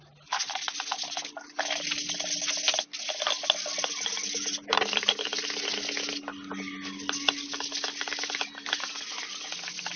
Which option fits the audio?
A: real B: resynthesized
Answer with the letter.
A